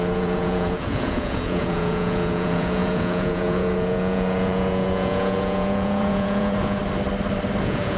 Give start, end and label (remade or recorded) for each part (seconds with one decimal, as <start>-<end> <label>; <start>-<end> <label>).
0.0-6.8 remade; 6.8-7.6 recorded; 7.6-8.0 remade